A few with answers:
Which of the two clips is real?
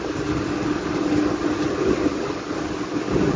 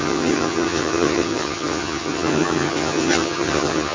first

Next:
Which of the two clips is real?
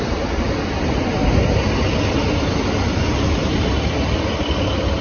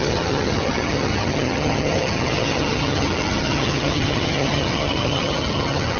first